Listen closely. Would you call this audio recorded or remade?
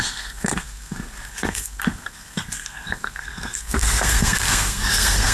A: remade